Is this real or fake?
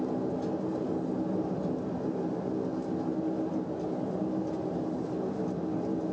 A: real